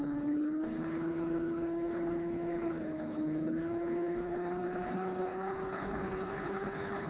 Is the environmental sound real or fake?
fake